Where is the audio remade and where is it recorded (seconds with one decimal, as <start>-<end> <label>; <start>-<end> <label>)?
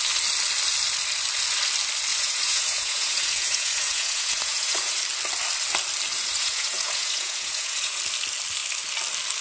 0.0-2.1 recorded; 2.1-5.0 remade; 5.0-6.1 recorded; 6.1-8.0 remade; 8.0-9.4 recorded